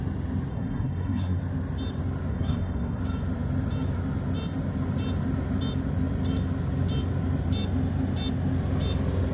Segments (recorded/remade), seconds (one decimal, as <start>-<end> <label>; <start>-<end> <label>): 0.0-0.5 recorded; 0.5-1.4 remade; 1.4-2.3 recorded; 2.3-3.0 remade; 3.0-9.3 recorded